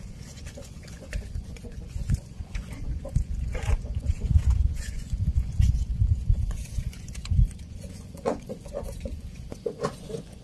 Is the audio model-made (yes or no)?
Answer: yes